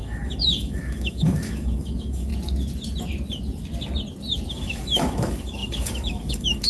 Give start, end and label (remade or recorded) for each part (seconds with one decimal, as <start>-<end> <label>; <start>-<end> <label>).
0.0-2.3 remade; 2.3-4.5 recorded; 4.5-6.7 remade